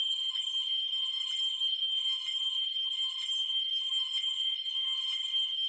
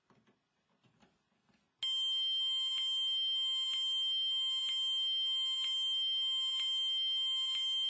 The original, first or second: second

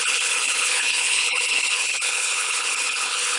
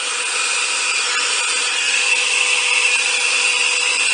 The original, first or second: second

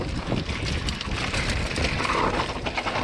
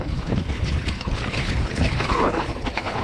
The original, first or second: first